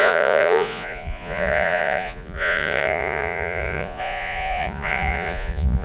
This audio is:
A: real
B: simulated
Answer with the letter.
B